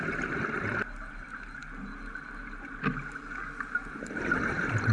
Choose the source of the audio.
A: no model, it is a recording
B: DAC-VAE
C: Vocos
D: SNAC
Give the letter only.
A